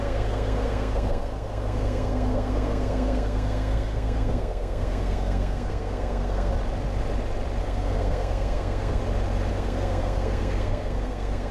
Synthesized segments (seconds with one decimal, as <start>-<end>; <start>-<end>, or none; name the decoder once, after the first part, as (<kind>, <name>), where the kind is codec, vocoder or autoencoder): 0.0-6.5 (codec, SNAC); 7.6-9.0; 9.5-11.5